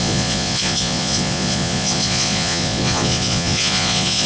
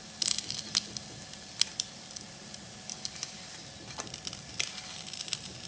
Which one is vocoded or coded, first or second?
first